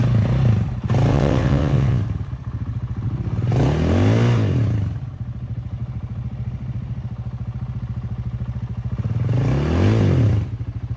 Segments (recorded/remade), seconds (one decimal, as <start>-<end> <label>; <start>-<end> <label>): 0.0-1.1 recorded; 1.1-2.0 remade; 2.0-11.0 recorded